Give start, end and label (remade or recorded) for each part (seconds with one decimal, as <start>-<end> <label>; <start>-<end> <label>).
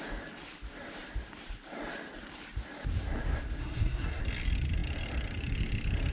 0.0-3.6 recorded; 3.6-4.2 remade; 4.2-6.1 recorded